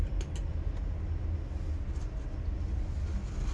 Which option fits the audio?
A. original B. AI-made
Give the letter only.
A